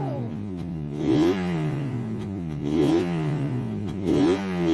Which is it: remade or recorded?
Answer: remade